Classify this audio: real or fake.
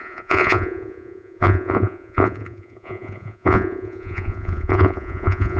fake